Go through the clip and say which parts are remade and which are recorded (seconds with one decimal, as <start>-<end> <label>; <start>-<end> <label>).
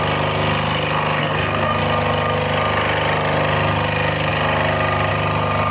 0.0-1.2 recorded; 1.2-1.8 remade; 1.8-5.7 recorded